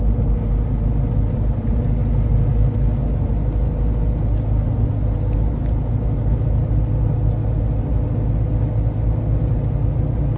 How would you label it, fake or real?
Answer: real